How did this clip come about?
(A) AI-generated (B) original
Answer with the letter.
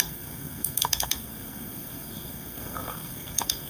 A